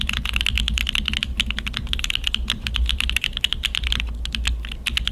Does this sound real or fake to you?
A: real